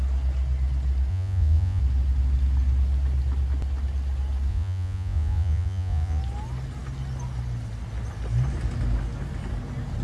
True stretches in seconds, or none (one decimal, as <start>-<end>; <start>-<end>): 0.0-1.1; 1.8-4.5; 6.2-10.0